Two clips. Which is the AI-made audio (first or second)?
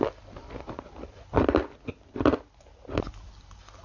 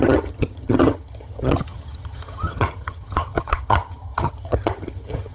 second